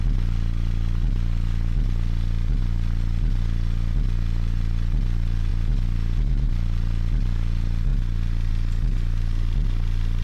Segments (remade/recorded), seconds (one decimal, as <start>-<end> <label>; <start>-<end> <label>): 0.0-10.2 recorded